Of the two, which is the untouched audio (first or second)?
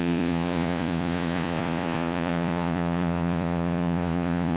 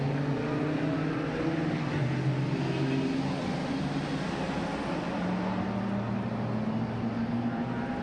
second